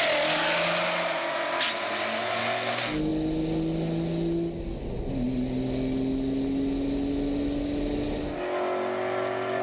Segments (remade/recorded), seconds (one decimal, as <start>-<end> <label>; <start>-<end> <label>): 0.0-9.6 recorded